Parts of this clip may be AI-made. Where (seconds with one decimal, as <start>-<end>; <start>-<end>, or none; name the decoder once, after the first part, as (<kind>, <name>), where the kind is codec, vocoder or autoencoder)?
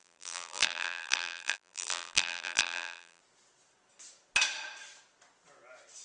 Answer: 0.0-3.2 (vocoder, BigVGAN v2)